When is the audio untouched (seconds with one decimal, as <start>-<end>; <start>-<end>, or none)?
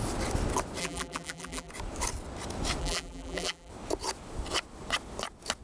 0.0-0.8; 1.7-2.8; 3.7-5.6